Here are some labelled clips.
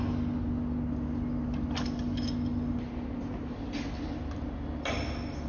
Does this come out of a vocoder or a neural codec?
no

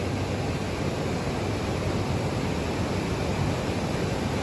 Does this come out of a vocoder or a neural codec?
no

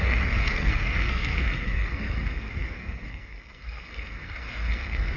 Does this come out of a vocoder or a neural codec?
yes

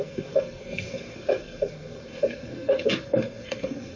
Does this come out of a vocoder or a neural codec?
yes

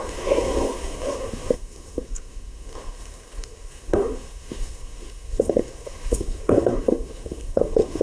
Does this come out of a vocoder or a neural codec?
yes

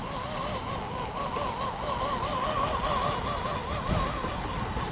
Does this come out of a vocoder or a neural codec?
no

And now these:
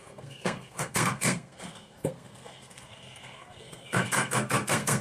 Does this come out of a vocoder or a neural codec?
yes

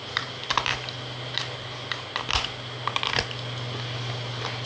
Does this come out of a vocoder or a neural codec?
no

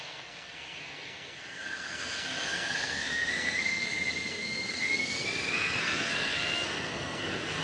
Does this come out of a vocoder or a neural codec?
yes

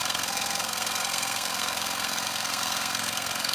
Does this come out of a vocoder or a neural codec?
yes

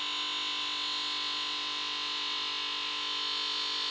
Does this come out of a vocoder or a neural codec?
no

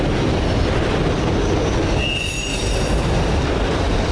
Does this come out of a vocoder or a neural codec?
no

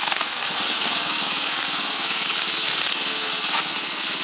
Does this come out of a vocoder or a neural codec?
yes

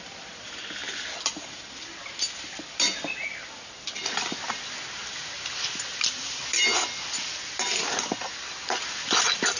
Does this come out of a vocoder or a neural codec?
no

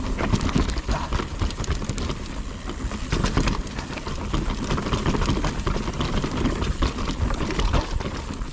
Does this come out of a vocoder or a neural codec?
no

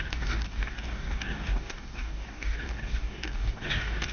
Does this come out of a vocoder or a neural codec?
yes